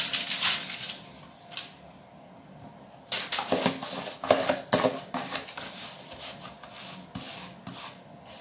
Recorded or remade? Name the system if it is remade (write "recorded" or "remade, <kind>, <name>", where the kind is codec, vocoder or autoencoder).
recorded